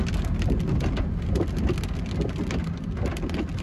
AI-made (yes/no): no